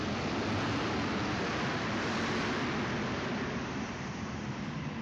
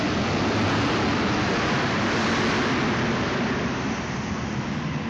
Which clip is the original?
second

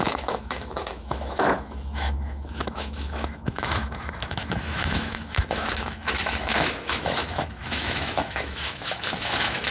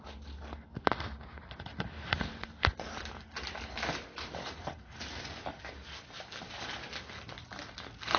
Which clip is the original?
second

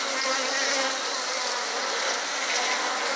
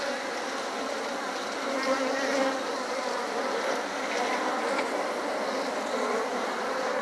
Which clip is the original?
first